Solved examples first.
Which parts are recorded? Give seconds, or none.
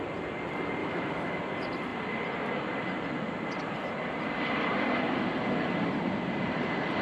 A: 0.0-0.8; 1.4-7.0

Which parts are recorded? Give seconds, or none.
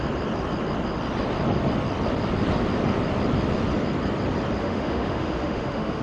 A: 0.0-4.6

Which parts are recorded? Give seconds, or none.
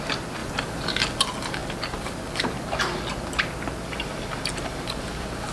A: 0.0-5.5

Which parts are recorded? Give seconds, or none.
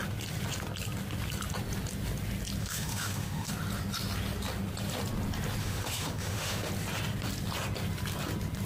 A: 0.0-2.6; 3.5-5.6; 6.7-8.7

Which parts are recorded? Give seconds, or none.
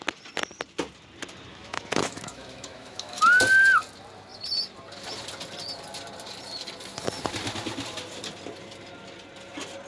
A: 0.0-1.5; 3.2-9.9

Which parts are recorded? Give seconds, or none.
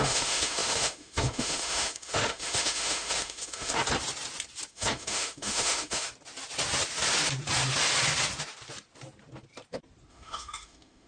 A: 3.8-4.7; 6.1-10.1